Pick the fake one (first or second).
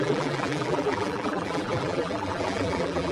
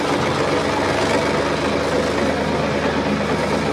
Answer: first